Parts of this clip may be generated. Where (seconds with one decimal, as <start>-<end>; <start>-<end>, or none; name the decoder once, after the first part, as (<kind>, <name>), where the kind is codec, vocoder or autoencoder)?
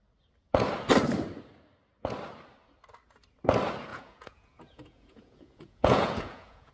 3.9-6.7 (vocoder, Vocos)